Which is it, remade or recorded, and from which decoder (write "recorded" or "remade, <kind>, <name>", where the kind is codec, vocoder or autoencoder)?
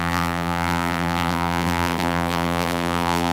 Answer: remade, vocoder, BigVGAN v2